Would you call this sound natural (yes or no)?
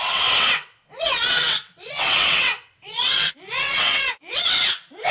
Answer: no